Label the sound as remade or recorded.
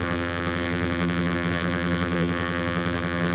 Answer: remade